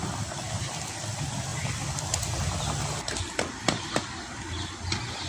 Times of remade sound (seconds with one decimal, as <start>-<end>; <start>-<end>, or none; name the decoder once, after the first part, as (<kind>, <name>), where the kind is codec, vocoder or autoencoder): none